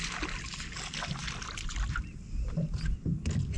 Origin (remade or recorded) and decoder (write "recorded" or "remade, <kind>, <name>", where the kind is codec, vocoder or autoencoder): recorded